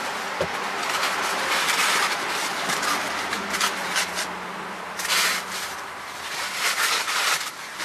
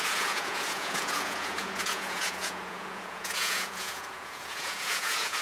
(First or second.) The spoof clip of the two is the second